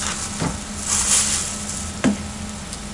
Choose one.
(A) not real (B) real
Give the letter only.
B